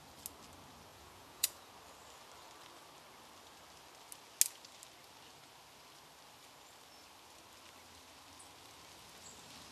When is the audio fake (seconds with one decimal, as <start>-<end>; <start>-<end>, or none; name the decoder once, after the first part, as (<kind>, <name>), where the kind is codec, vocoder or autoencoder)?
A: 0.9-1.7 (vocoder, Vocos)